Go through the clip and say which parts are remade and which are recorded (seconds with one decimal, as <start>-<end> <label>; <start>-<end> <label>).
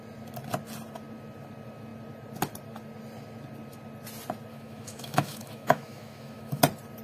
0.0-4.5 recorded; 4.5-6.6 remade; 6.6-7.0 recorded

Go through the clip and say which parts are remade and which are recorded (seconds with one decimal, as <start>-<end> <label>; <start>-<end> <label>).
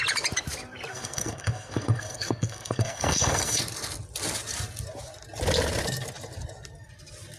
0.0-0.9 recorded; 0.9-3.6 remade; 3.6-7.4 recorded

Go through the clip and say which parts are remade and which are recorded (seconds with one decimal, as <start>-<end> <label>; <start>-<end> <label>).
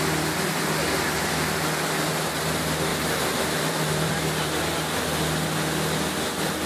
0.0-2.9 recorded; 2.9-4.5 remade; 4.5-6.7 recorded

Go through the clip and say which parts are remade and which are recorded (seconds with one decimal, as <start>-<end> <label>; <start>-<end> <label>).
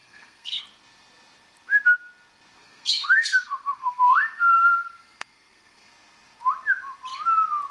0.0-0.6 remade; 0.6-2.6 recorded; 2.6-5.9 remade; 5.9-7.7 recorded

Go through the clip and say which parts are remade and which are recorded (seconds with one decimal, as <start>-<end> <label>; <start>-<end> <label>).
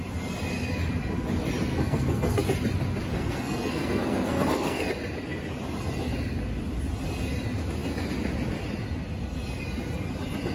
0.0-1.7 recorded; 1.7-2.4 remade; 2.4-3.1 recorded; 3.1-4.9 remade; 4.9-10.5 recorded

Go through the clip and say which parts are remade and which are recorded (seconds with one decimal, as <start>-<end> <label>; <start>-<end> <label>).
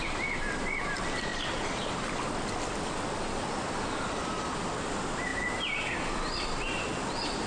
0.0-7.5 recorded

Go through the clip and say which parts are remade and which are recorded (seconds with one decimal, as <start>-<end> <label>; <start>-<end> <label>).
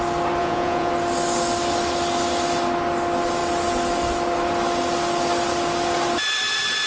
0.0-0.4 recorded; 0.4-0.9 remade; 0.9-6.9 recorded